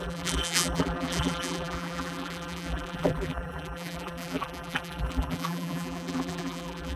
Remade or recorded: remade